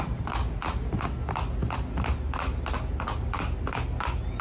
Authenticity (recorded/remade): recorded